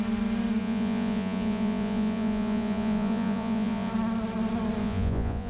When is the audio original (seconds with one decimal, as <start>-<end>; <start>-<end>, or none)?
0.0-0.6; 3.9-4.8